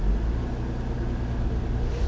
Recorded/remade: recorded